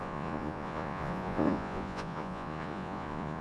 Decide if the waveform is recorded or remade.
remade